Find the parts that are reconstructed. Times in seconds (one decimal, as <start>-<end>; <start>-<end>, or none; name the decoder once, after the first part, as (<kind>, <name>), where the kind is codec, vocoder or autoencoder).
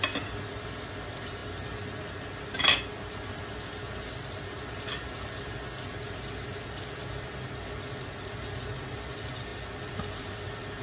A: none